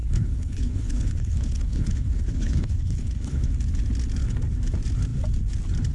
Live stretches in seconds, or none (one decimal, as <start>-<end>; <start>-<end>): 3.5-5.9